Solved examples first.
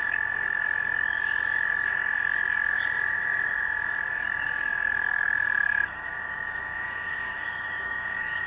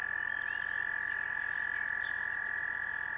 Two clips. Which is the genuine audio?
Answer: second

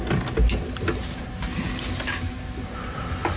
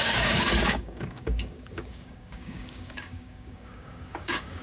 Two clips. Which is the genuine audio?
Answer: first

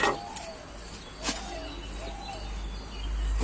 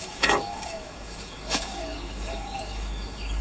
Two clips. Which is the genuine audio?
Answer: first